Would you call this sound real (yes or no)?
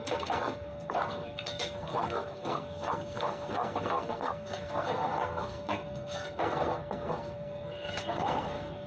no